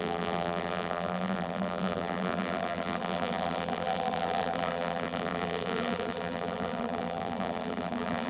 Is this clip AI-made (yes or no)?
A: yes